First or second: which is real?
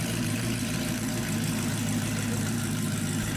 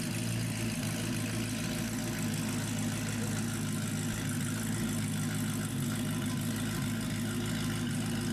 second